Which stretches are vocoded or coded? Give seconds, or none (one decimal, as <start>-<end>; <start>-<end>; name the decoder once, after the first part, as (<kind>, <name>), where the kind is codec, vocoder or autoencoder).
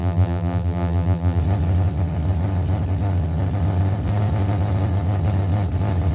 0.0-1.4 (vocoder, BigVGAN v2)